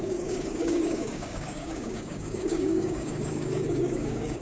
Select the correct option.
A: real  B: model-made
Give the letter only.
B